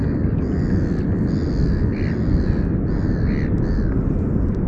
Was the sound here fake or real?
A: real